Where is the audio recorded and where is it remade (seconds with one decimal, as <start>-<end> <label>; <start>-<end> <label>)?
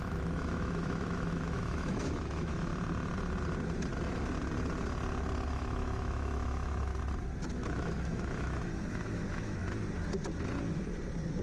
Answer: 0.0-2.7 remade; 2.7-5.5 recorded; 5.5-6.9 remade; 6.9-7.5 recorded; 7.5-9.6 remade; 9.6-11.4 recorded